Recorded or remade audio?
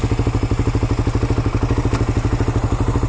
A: recorded